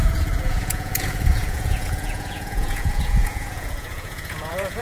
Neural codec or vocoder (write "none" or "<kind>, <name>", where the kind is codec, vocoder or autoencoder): vocoder, Vocos